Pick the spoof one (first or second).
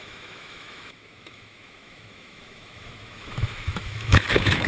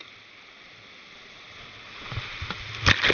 first